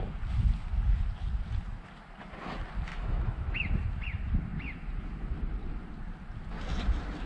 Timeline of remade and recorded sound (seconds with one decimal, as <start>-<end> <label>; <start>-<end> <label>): 0.0-2.9 recorded; 2.9-3.5 remade; 3.5-7.3 recorded